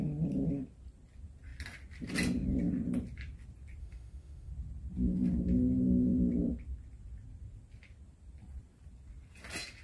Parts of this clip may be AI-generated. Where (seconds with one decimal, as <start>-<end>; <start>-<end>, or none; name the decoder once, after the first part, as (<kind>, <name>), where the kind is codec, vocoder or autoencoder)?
3.8-4.5 (autoencoder, DAC-VAE)